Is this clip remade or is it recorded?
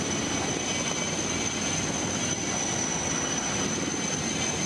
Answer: recorded